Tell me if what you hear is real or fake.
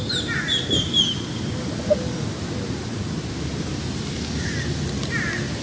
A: real